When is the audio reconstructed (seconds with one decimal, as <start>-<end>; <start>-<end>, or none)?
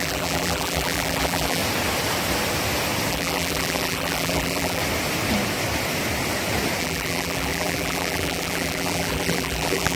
0.0-1.6; 3.1-4.8; 6.8-10.0